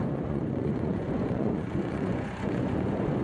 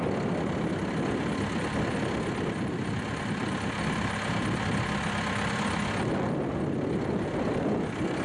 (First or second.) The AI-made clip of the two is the first